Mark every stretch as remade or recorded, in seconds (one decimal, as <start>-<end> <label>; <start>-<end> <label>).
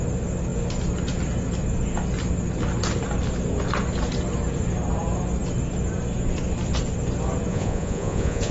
0.0-7.5 recorded; 7.5-8.5 remade